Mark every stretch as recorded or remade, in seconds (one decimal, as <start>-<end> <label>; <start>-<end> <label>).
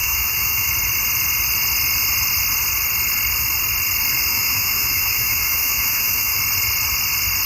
0.0-0.7 remade; 0.7-4.3 recorded; 4.3-6.4 remade; 6.4-7.5 recorded